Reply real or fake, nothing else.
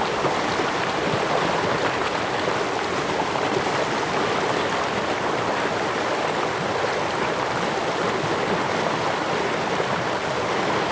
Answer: real